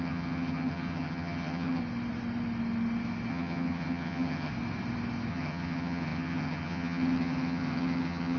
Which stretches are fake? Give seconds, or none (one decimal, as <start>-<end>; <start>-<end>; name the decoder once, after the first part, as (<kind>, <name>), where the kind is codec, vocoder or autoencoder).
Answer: 0.0-1.8 (vocoder, HiFi-GAN); 3.3-4.5; 5.3-8.4